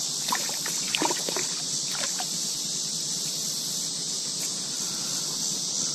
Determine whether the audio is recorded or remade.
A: recorded